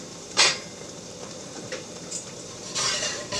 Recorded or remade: remade